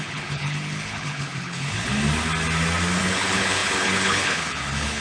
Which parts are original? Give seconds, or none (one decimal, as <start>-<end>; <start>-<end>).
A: 1.9-3.0